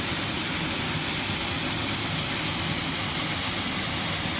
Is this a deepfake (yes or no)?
no